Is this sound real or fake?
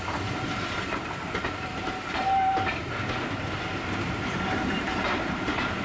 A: fake